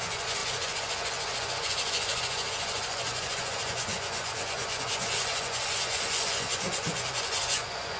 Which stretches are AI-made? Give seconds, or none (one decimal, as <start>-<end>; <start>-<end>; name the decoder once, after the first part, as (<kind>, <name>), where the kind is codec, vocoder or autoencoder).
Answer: 0.0-8.0 (vocoder, Vocos)